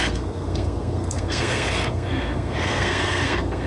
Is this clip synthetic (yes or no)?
yes